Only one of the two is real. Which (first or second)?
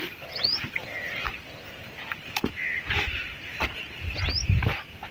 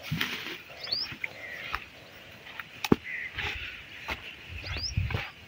second